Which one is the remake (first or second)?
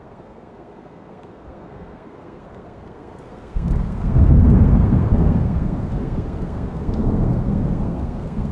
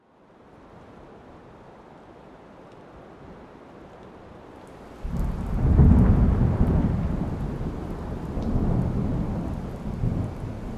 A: first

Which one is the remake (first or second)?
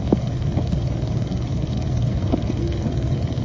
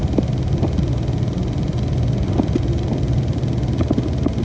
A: first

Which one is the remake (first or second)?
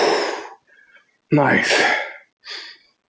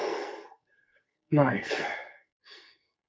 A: second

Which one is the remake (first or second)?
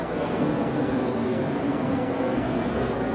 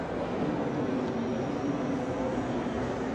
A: first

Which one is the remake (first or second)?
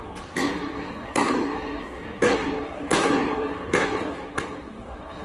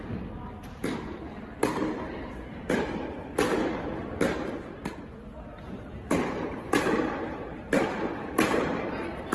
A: first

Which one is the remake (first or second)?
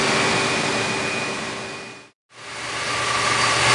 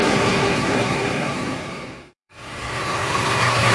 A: second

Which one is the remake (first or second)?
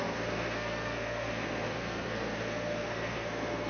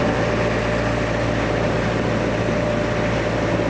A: first